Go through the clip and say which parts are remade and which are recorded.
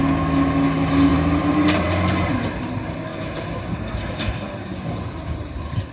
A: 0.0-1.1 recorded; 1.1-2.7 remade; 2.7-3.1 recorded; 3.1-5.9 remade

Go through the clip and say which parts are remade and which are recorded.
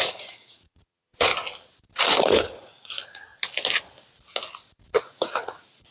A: 0.0-1.3 remade; 1.3-2.2 recorded; 2.2-3.3 remade; 3.3-5.0 recorded; 5.0-5.9 remade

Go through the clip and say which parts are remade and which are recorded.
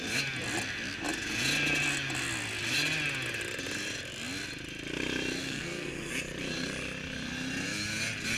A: 0.0-5.4 recorded; 5.4-6.1 remade; 6.1-8.4 recorded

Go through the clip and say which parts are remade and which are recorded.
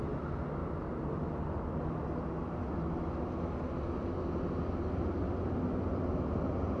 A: 0.0-6.8 recorded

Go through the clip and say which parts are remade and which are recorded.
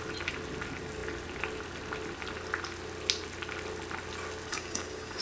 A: 0.0-4.5 recorded; 4.5-5.2 remade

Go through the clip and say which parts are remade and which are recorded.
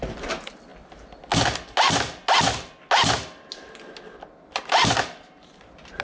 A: 0.0-6.0 recorded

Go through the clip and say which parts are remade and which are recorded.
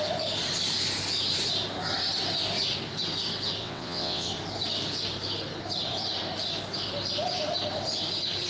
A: 0.0-3.6 recorded; 3.6-4.3 remade; 4.3-8.5 recorded